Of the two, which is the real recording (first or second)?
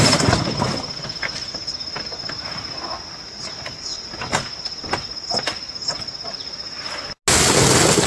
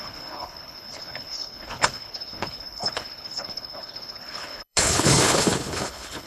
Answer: first